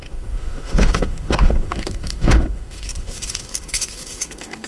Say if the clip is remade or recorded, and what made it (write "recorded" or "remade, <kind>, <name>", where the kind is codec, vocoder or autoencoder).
remade, autoencoder, DAC-VAE